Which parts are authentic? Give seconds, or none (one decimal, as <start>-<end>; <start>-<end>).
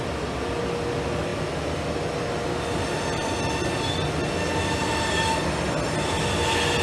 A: 0.0-6.8